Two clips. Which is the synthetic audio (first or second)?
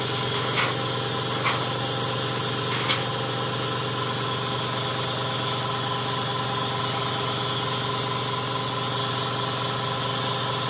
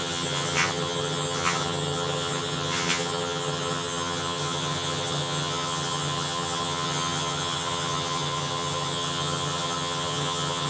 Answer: second